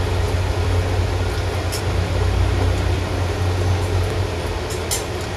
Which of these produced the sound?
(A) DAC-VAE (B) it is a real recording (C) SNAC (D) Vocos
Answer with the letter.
B